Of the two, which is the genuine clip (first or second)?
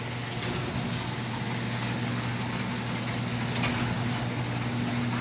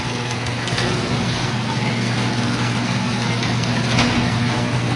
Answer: first